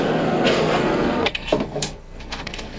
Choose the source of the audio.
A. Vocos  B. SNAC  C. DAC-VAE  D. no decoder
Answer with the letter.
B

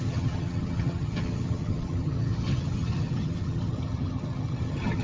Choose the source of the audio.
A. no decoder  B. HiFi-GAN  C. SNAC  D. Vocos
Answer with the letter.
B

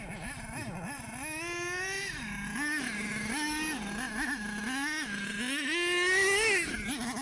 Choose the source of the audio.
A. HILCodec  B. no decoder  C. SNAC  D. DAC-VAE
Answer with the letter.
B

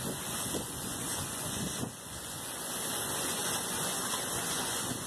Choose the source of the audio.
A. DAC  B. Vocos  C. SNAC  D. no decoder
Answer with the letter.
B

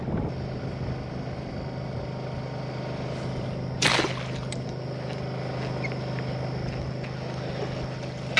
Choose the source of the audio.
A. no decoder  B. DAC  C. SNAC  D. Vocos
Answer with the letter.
A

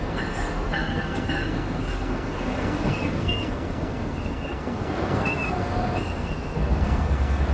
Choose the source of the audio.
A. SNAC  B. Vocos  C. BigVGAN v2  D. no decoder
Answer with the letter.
A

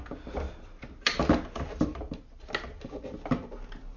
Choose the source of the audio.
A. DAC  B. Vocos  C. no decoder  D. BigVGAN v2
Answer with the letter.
C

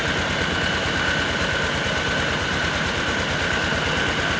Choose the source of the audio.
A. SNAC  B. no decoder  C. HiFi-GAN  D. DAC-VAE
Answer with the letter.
B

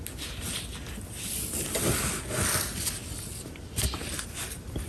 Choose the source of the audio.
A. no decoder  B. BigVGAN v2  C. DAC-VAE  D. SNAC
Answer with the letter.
A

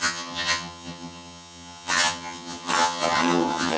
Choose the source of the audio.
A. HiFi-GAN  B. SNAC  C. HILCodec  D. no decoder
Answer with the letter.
A